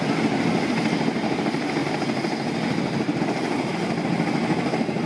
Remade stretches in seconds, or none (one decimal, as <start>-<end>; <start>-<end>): none